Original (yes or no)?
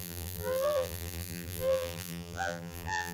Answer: no